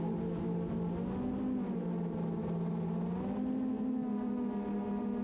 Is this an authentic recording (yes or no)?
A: yes